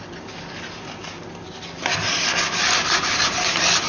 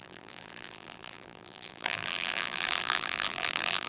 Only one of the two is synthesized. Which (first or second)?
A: second